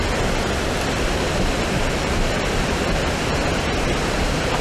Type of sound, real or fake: real